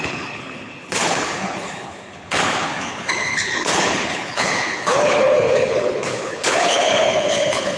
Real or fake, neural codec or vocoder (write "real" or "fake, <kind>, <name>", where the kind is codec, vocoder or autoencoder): fake, codec, HILCodec